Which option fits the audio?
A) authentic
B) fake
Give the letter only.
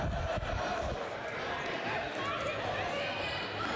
A